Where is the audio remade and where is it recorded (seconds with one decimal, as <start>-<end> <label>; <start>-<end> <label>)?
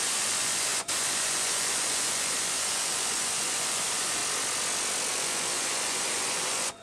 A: 0.0-4.2 remade; 4.2-5.1 recorded; 5.1-6.8 remade